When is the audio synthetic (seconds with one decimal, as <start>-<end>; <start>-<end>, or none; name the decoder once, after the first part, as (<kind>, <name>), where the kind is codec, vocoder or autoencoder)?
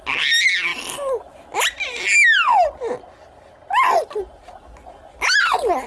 none